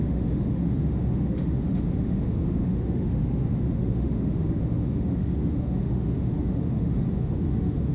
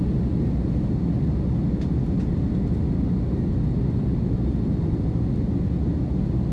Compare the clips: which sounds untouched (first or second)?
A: second